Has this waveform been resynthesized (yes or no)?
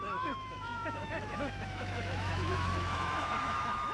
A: yes